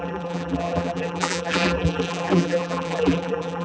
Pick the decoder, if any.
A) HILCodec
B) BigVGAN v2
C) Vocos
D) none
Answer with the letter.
B